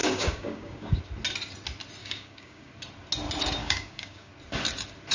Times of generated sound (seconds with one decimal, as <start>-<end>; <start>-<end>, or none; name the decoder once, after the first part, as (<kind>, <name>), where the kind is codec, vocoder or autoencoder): 0.0-1.0 (codec, DAC); 2.0-2.7; 3.6-4.3